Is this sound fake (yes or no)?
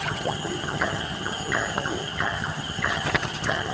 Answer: yes